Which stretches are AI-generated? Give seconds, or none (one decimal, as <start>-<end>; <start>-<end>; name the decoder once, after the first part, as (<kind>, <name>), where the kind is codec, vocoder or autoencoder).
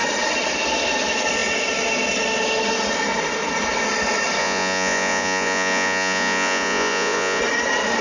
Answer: 4.4-7.4 (vocoder, Vocos)